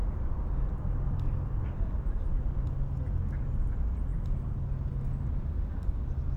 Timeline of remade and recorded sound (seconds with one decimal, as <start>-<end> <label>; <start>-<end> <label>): 0.0-6.4 recorded